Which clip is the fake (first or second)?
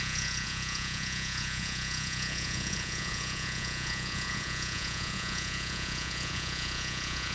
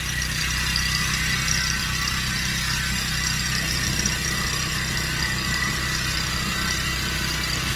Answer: first